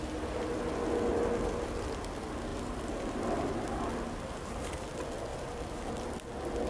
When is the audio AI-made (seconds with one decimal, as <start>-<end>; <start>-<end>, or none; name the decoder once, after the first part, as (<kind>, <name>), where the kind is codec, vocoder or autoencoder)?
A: 2.5-3.9 (vocoder, BigVGAN v2); 5.3-5.9